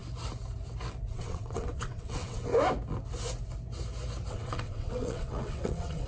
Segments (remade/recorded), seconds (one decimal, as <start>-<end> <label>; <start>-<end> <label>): 0.0-1.1 recorded; 1.1-2.5 remade; 2.5-4.3 recorded; 4.3-6.1 remade